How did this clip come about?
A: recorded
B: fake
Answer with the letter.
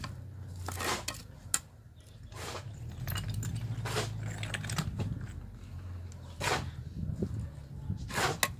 A